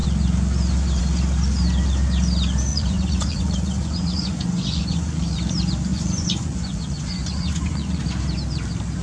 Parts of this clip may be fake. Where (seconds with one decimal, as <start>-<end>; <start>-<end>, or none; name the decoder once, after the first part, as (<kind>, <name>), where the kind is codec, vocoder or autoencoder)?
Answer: 2.7-5.4 (vocoder, Vocos); 5.9-8.0